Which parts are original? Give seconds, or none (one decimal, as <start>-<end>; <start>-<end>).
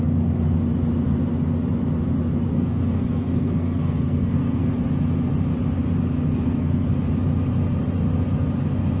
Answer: 0.0-2.5; 4.7-6.3; 6.9-9.0